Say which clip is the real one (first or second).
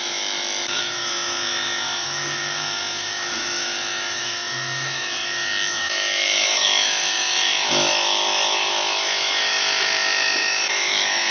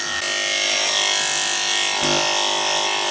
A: second